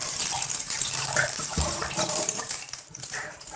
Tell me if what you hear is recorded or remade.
remade